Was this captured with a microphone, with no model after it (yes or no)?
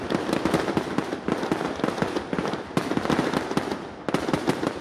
yes